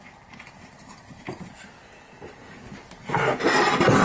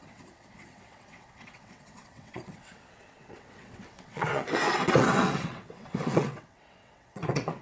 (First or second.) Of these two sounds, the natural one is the first